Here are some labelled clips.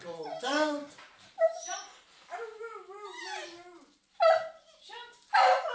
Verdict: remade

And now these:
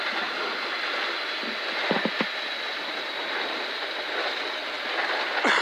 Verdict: recorded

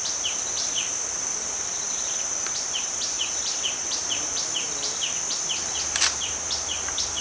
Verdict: remade